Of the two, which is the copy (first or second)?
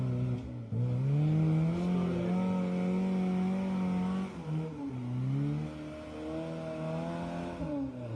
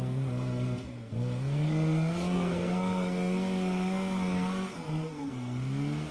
second